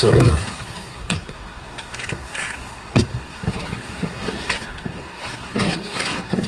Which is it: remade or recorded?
remade